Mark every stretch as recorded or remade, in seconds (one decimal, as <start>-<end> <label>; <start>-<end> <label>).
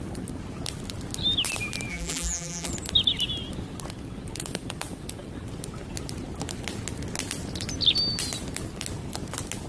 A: 0.0-1.9 recorded; 1.9-2.7 remade; 2.7-9.7 recorded